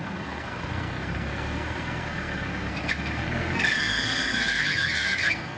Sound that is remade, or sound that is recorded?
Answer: remade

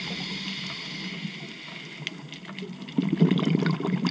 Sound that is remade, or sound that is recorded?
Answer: recorded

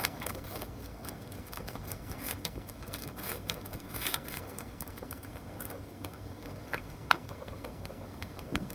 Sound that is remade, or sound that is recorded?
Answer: remade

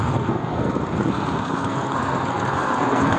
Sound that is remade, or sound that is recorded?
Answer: remade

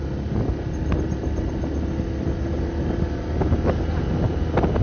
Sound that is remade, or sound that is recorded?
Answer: recorded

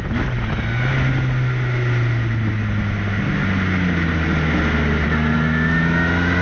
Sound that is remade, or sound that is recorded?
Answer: recorded